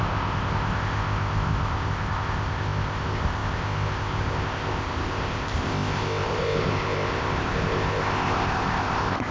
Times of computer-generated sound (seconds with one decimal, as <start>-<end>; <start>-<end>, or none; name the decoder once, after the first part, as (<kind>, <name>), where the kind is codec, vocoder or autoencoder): 0.0-9.3 (codec, ZipCodec)